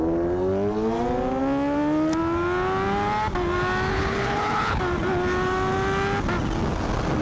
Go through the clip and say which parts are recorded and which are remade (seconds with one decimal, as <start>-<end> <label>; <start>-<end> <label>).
0.0-3.9 recorded; 3.9-4.8 remade; 4.8-7.2 recorded

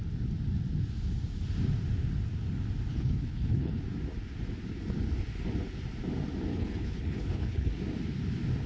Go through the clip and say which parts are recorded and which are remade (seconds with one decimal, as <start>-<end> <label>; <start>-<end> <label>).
0.0-2.9 recorded; 2.9-3.8 remade; 3.8-6.5 recorded; 6.5-7.7 remade; 7.7-8.7 recorded